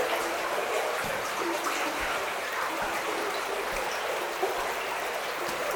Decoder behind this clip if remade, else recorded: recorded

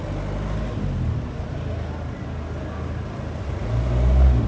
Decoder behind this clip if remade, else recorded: recorded